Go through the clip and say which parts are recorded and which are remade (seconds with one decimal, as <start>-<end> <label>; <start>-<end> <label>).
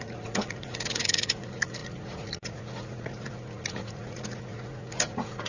0.0-5.5 remade